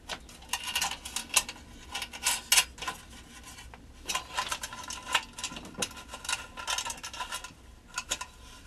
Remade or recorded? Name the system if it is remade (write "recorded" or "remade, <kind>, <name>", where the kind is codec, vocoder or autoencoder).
recorded